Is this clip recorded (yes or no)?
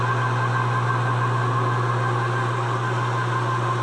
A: yes